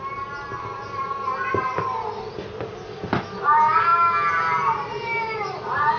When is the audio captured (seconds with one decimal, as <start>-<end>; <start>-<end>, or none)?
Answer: 0.0-6.0